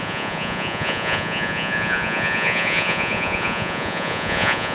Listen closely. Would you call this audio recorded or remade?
remade